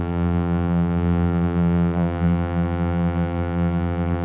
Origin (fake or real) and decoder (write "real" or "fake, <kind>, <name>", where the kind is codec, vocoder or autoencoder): fake, vocoder, BigVGAN v2